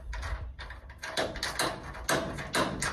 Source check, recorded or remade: recorded